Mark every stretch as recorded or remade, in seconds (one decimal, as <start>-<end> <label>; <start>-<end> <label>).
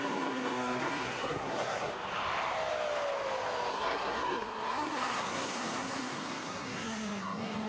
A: 0.0-1.9 remade; 1.9-3.7 recorded; 3.7-7.7 remade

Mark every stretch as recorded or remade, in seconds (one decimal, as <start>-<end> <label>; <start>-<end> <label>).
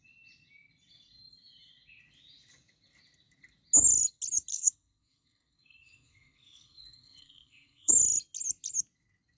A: 0.0-4.5 recorded; 4.5-7.9 remade; 7.9-9.4 recorded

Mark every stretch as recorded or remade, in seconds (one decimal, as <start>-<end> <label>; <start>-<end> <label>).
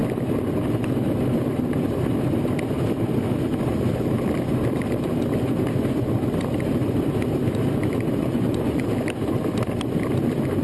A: 0.0-8.2 recorded; 8.2-8.8 remade; 8.8-10.6 recorded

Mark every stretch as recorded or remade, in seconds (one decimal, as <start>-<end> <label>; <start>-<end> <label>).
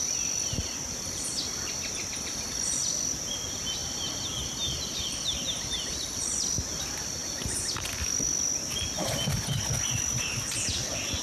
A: 0.0-11.2 recorded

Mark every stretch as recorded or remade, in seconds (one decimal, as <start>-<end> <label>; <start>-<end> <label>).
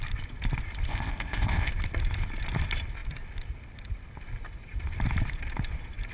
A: 0.0-0.9 recorded; 0.9-1.7 remade; 1.7-6.1 recorded